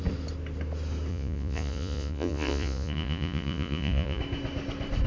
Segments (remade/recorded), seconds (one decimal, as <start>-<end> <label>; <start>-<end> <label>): 0.0-1.1 recorded; 1.1-4.2 remade; 4.2-5.1 recorded